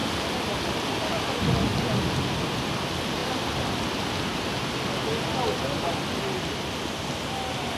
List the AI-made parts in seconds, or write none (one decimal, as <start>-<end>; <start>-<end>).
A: 0.0-1.0; 1.7-2.7; 3.2-3.8; 5.1-6.8